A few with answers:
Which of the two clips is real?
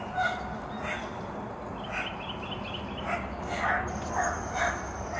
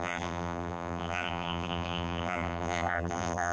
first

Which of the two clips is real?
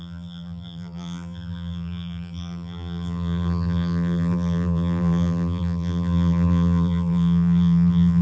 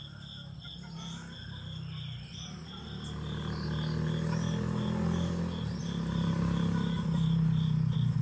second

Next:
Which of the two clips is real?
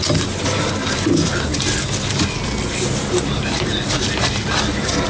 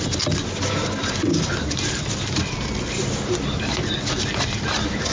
first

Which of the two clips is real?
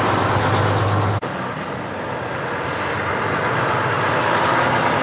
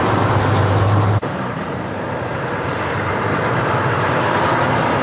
first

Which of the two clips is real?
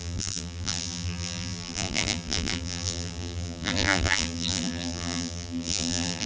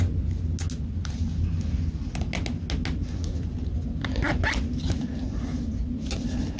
second